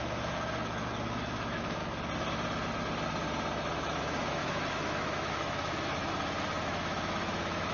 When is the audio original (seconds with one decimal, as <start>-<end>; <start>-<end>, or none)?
1.8-3.6; 6.0-6.6